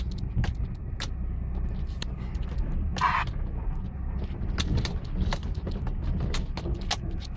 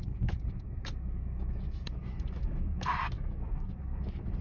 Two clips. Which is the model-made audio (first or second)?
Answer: second